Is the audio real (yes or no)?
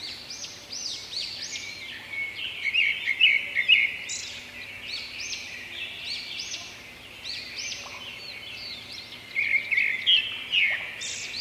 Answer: yes